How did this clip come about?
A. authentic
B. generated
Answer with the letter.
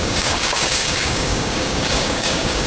B